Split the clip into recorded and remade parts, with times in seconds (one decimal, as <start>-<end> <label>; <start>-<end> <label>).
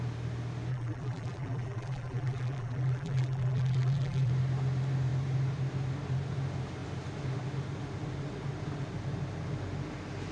0.0-0.7 recorded; 0.7-4.3 remade; 4.3-10.3 recorded